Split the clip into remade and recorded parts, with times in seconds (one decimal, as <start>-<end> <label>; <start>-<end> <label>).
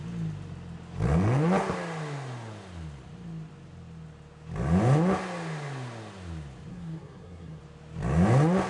0.0-6.7 recorded; 6.7-7.6 remade; 7.6-8.7 recorded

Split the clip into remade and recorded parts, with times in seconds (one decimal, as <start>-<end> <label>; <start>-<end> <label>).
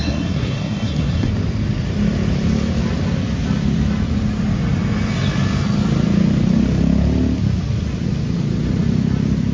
0.0-1.3 remade; 1.3-9.5 recorded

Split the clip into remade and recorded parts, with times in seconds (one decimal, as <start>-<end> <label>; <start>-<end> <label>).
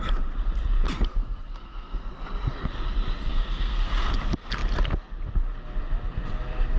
0.0-1.1 recorded; 1.1-2.1 remade; 2.1-3.3 recorded; 3.3-4.1 remade; 4.1-6.8 recorded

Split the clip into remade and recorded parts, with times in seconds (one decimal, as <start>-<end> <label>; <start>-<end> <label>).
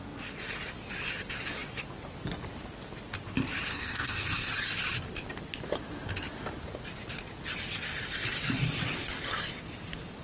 0.0-3.7 recorded; 3.7-4.5 remade; 4.5-10.2 recorded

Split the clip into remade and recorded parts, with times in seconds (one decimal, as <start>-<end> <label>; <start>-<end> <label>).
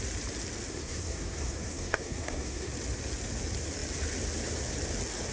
0.0-0.7 recorded; 0.7-2.7 remade; 2.7-5.3 recorded